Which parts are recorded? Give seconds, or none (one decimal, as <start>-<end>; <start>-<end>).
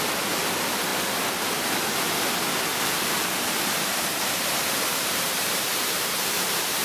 0.0-2.7